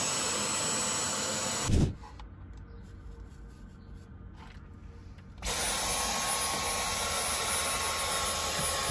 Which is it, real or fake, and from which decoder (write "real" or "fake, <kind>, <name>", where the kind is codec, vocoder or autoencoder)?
real